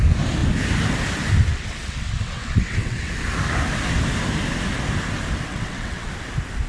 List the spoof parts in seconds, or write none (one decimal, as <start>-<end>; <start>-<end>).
1.5-3.1; 5.5-6.1